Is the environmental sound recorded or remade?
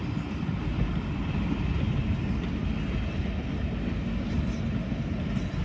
recorded